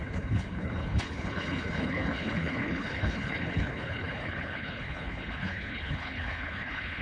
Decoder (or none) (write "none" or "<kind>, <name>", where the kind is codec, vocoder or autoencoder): codec, HILCodec